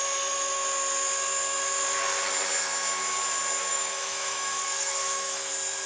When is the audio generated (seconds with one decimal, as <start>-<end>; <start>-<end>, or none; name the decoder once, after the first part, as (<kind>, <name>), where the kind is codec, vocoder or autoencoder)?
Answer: 3.7-4.6 (autoencoder, DAC-VAE); 5.0-5.5